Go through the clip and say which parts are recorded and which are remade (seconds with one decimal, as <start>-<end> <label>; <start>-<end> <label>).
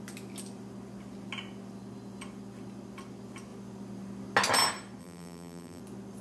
0.0-5.0 recorded; 5.0-5.8 remade; 5.8-6.2 recorded